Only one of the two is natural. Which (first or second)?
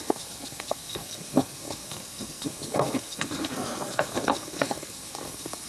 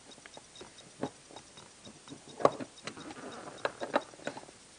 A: second